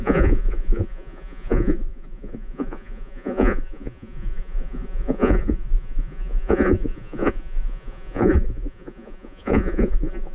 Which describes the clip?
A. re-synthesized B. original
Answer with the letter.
A